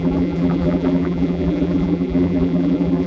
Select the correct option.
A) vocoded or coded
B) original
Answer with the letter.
A